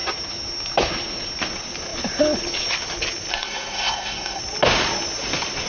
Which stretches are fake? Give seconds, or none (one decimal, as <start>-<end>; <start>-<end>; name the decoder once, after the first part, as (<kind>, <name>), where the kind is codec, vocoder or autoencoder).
3.3-4.4 (codec, SNAC)